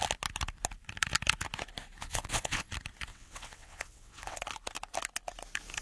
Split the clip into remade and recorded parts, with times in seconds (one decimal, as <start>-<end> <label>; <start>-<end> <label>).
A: 0.0-2.0 recorded; 2.0-2.7 remade; 2.7-3.1 recorded; 3.1-4.4 remade; 4.4-5.8 recorded